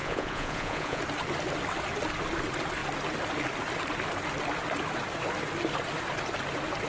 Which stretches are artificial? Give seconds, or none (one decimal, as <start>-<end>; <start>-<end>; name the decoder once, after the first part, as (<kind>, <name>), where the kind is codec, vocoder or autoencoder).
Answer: 0.0-1.0 (vocoder, Vocos)